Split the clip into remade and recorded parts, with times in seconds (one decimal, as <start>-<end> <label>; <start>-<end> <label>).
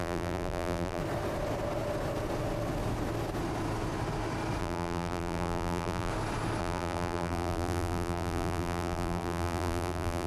0.0-1.0 remade; 1.0-4.6 recorded; 4.6-6.1 remade; 6.1-6.6 recorded; 6.6-10.3 remade